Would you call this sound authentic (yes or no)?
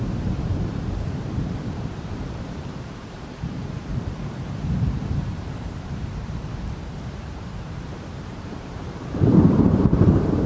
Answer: no